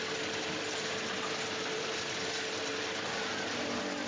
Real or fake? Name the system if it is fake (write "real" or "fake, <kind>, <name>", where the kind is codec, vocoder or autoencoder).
real